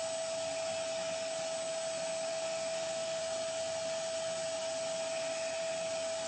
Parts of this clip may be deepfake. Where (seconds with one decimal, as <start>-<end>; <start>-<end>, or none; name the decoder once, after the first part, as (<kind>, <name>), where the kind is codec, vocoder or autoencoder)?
2.3-3.2 (autoencoder, DAC-VAE)